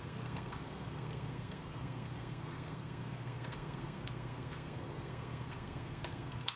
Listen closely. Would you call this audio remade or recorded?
remade